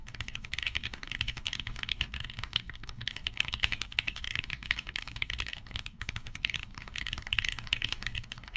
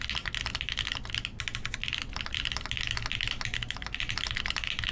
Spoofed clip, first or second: first